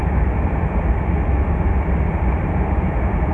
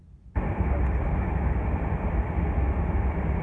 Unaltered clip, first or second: first